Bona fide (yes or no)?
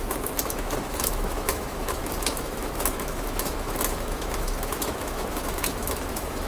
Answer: no